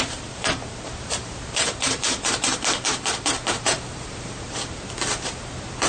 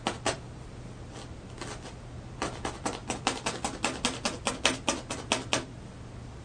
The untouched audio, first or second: second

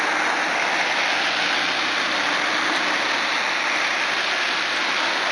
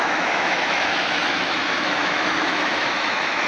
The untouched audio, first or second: first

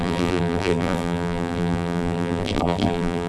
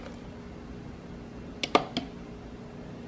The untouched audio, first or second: second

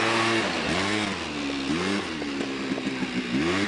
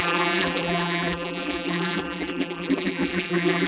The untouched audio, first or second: first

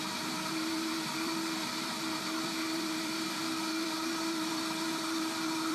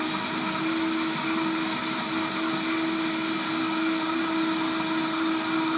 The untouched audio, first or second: second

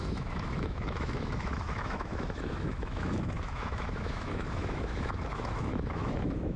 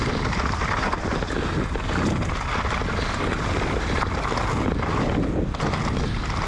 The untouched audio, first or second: second